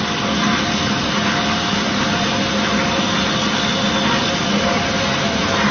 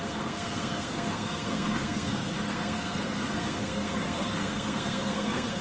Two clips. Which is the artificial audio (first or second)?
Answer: second